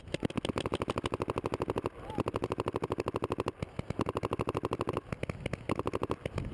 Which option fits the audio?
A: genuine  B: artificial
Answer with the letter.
A